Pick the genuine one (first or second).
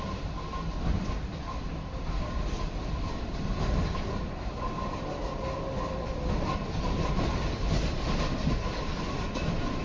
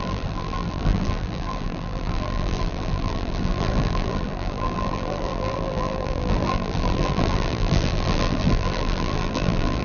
first